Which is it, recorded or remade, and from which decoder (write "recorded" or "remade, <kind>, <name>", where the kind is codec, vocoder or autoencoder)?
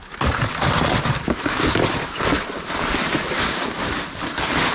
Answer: recorded